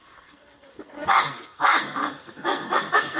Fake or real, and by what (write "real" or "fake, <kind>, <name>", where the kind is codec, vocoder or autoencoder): fake, codec, SNAC